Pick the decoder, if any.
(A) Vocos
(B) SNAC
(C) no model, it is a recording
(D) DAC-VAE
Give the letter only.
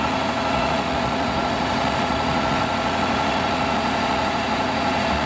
A